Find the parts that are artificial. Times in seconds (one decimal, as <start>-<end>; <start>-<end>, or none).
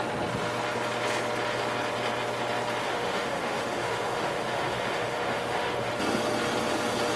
2.8-5.9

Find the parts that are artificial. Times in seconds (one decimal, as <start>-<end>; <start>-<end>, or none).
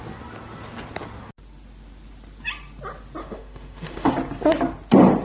3.2-4.1